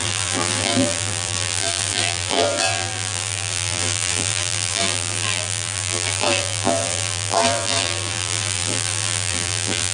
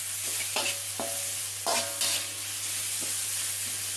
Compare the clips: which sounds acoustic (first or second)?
second